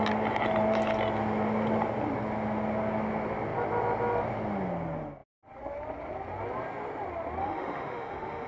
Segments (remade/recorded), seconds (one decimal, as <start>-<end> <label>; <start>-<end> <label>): 0.0-7.4 recorded; 7.4-8.5 remade